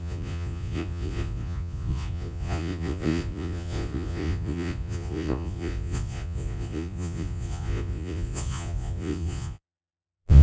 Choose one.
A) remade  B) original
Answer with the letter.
A